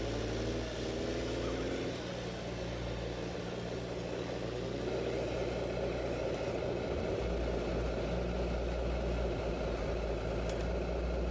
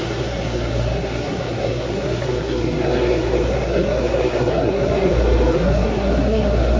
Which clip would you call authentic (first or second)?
first